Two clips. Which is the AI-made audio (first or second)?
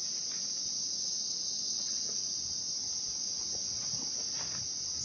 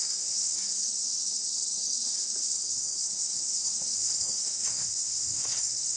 second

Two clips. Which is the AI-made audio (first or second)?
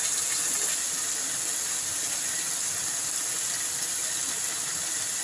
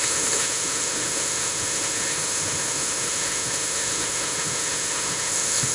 second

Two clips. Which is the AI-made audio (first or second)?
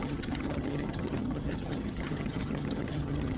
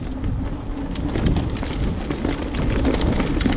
first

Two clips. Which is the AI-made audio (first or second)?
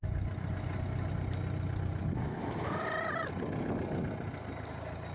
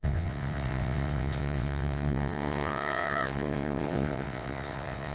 second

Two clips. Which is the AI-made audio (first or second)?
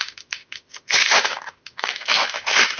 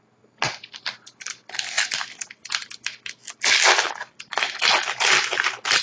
first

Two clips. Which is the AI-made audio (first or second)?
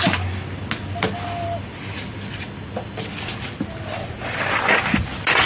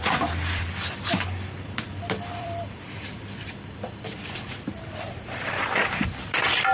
second